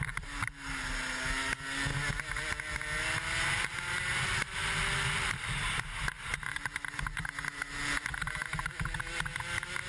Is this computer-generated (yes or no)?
no